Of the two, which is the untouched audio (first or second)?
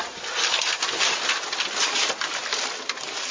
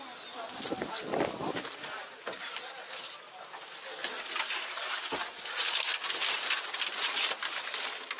second